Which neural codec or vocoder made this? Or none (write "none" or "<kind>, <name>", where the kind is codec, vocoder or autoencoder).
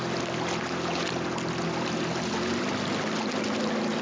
none